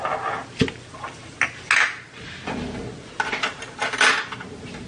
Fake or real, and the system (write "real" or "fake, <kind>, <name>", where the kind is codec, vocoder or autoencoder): real